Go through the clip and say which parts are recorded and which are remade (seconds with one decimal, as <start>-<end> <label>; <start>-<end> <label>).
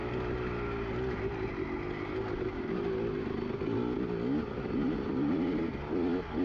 0.0-6.4 recorded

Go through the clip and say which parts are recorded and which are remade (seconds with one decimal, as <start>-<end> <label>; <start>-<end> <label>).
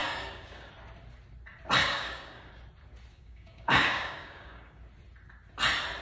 0.0-0.7 remade; 0.7-1.8 recorded; 1.8-2.5 remade; 2.5-3.1 recorded; 3.1-4.8 remade; 4.8-6.0 recorded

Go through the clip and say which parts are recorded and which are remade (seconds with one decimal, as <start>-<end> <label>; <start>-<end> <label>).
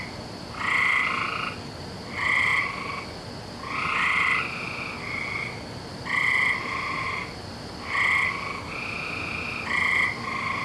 0.0-10.6 recorded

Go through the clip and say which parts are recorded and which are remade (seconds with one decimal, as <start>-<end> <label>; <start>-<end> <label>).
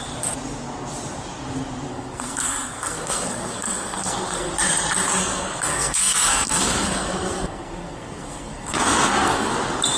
0.0-1.9 recorded; 1.9-4.5 remade; 4.5-5.2 recorded; 5.2-9.5 remade; 9.5-10.0 recorded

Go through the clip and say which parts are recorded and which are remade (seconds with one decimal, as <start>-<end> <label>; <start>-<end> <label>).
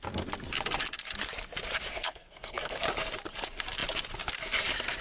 0.0-1.9 recorded; 1.9-2.8 remade; 2.8-5.0 recorded